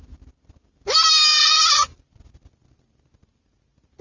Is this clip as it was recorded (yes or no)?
yes